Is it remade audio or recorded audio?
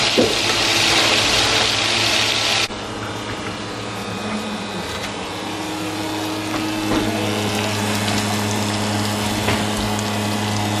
recorded